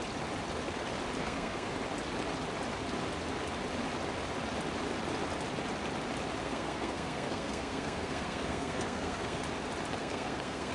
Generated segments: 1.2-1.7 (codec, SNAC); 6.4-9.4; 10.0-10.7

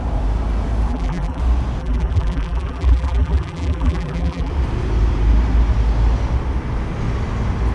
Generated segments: 0.9-1.4 (vocoder, BigVGAN v2); 1.8-4.5

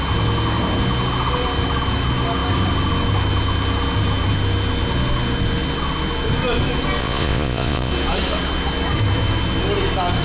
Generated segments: 7.0-7.9 (vocoder, Vocos)